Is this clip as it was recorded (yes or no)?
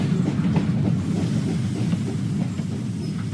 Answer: yes